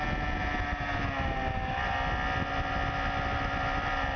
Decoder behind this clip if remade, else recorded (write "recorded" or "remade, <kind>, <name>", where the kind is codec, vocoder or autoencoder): recorded